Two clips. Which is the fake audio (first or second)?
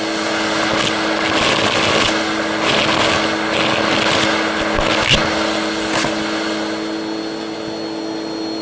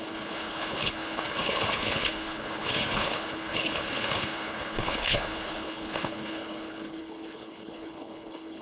second